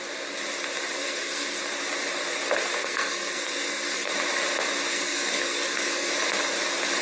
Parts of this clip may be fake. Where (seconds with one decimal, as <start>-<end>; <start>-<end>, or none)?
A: 1.0-1.6; 2.8-4.1; 4.9-6.1

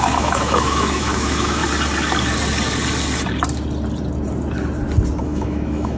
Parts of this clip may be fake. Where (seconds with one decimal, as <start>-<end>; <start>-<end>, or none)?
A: 0.0-1.6; 5.2-6.0

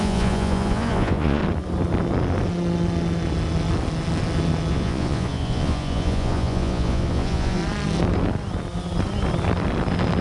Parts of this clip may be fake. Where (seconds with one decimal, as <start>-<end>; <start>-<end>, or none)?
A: 0.0-1.4; 4.7-7.6

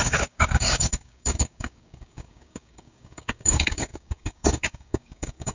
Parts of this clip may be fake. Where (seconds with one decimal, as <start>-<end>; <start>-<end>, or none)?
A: 0.0-5.5

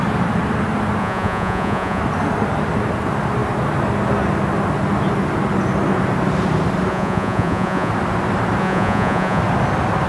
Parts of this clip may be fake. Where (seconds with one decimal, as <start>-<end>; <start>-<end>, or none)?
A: 1.0-2.0; 6.9-7.9; 8.6-9.4

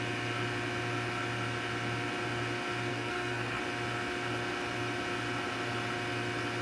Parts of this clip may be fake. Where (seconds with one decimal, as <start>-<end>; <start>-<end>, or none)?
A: 2.9-3.6